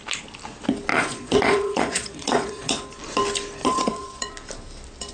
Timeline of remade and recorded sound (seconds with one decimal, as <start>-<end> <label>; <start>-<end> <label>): 0.0-0.9 recorded; 0.9-2.7 remade; 2.7-3.6 recorded; 3.6-4.3 remade; 4.3-5.1 recorded